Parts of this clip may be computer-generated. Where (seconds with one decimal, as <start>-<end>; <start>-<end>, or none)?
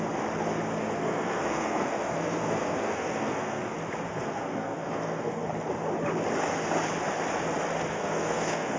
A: 0.8-3.6; 4.1-5.5; 7.9-8.8